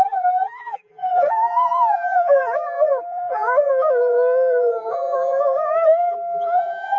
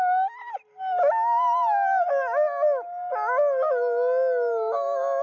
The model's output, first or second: first